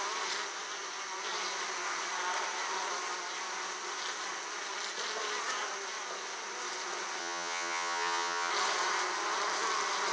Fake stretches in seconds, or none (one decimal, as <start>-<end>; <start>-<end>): 7.2-8.5